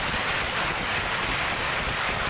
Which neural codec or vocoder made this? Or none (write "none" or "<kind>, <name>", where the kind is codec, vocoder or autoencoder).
none